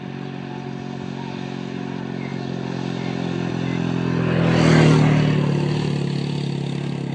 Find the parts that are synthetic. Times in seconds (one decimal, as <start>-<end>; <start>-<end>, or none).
none

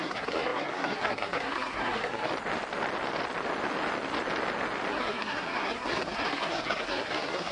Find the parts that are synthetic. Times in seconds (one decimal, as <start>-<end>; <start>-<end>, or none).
0.0-2.3; 4.9-7.5